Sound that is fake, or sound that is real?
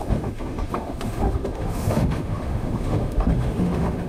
fake